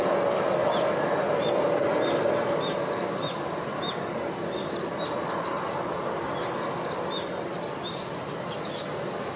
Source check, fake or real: real